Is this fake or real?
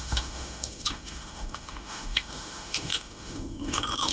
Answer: fake